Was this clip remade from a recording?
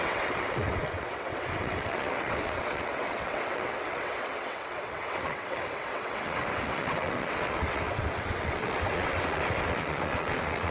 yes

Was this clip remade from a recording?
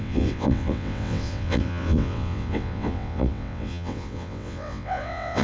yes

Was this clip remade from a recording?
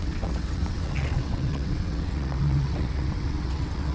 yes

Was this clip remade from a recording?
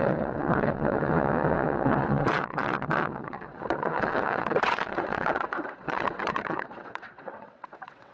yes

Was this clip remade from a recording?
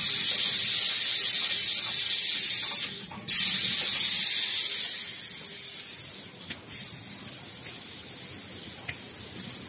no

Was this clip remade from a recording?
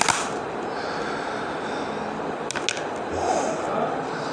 no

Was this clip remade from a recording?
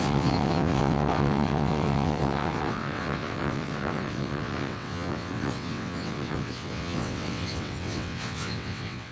yes